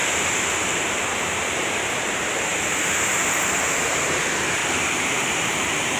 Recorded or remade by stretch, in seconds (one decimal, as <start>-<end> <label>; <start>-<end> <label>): 0.0-1.2 recorded; 1.2-6.0 remade